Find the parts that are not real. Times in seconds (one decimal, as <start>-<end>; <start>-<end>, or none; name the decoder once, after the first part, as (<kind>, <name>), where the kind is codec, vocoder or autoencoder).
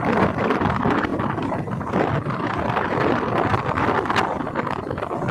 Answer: none